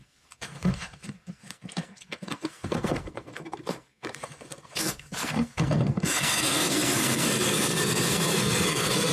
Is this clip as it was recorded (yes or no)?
no